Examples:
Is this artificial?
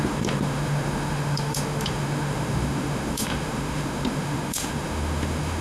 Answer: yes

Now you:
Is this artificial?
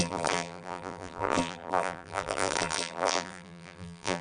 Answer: yes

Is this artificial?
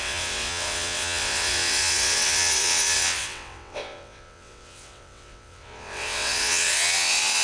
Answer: yes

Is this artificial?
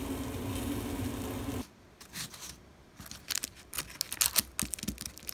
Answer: no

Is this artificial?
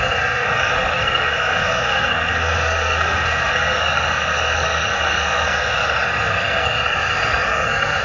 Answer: yes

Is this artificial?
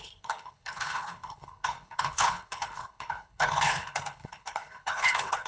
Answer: yes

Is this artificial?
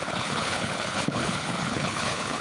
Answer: yes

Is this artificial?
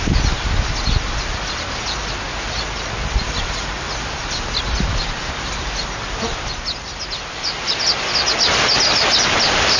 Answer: no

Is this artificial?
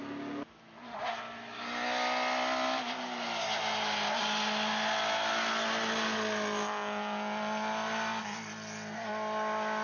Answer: no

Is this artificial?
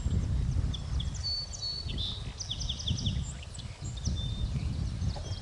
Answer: no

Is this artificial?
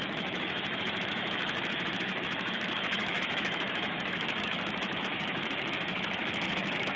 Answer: yes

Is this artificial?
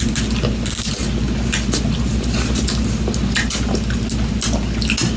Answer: no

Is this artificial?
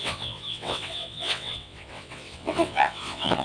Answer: yes